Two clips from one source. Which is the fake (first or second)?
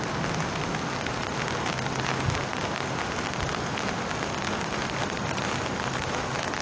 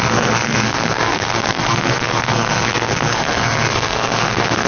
second